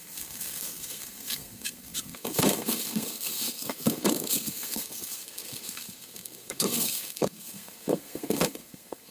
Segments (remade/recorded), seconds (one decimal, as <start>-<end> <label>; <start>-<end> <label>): 0.0-9.1 remade